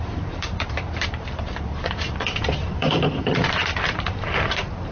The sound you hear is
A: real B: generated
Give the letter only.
B